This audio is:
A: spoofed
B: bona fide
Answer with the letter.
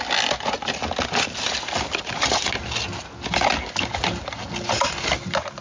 B